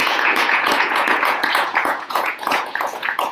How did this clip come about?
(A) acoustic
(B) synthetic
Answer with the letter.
B